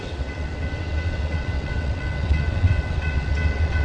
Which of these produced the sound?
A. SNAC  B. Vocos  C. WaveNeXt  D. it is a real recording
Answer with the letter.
C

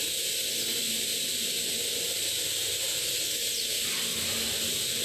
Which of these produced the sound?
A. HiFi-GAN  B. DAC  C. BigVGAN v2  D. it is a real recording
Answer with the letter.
D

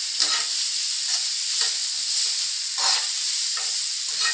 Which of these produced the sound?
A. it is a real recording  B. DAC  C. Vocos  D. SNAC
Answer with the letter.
A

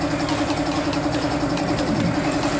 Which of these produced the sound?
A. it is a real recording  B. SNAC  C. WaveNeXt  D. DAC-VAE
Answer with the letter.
A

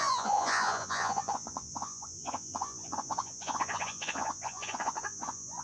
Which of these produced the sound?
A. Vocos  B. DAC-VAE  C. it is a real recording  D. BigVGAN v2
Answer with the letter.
A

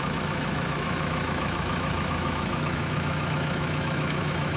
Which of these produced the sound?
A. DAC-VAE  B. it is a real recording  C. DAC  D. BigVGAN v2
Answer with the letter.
A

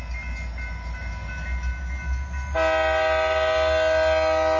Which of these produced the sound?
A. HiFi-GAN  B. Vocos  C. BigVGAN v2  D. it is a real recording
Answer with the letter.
D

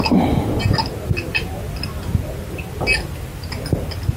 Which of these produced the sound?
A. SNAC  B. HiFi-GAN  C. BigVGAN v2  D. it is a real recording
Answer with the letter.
D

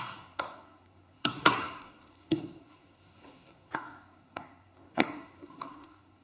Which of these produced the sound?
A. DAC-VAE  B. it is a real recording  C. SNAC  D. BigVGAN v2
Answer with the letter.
C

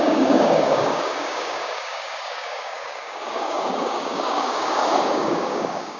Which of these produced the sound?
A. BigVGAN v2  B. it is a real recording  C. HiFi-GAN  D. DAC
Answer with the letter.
D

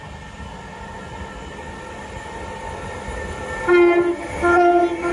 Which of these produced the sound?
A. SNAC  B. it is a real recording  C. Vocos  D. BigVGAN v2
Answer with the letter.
B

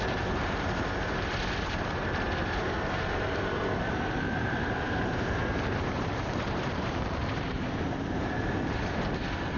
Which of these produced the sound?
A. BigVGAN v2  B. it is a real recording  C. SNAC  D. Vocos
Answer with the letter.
A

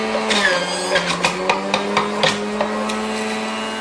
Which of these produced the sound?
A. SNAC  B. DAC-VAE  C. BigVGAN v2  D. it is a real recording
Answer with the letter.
D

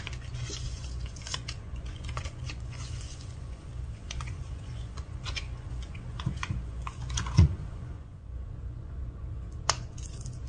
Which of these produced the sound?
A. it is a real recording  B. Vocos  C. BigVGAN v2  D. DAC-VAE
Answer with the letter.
B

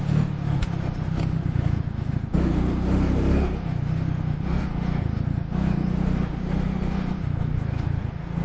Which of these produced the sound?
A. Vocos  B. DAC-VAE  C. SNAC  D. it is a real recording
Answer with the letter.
B